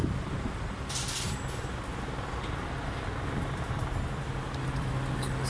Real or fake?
real